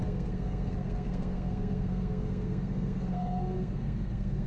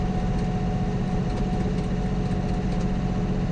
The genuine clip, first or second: second